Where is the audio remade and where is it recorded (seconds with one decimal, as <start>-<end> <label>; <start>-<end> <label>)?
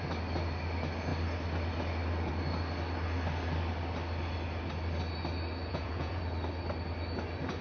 0.0-5.6 recorded; 5.6-6.2 remade; 6.2-7.6 recorded